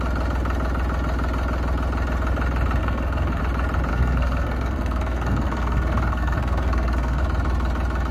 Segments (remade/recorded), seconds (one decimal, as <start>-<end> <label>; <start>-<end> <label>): 0.0-2.8 recorded; 2.8-3.4 remade; 3.4-3.9 recorded; 3.9-7.2 remade; 7.2-8.1 recorded